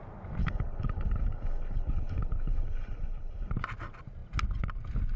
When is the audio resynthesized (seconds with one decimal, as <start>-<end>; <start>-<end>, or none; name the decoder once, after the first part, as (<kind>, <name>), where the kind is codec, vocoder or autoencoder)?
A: 0.4-3.5 (codec, HILCodec)